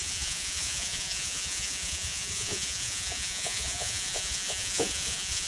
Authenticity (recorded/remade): remade